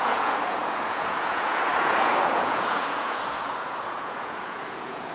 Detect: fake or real fake